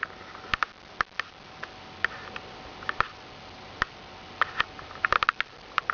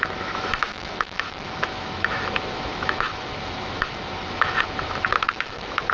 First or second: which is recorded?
first